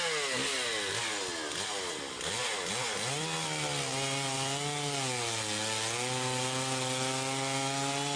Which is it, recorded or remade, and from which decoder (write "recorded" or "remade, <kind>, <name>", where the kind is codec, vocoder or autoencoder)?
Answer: recorded